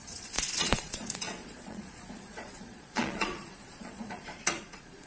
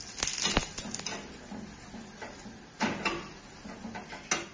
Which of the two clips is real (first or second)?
second